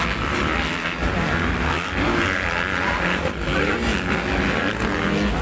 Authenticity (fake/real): real